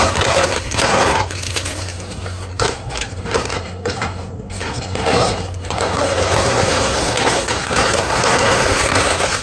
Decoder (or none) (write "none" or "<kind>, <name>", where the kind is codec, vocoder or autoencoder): codec, SNAC